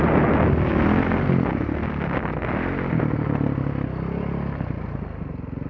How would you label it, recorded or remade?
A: recorded